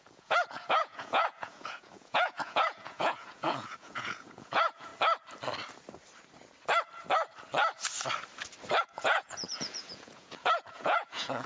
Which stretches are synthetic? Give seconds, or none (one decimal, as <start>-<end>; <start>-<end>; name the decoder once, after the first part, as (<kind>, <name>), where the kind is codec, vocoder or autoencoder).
0.0-4.9 (vocoder, Vocos); 8.8-11.5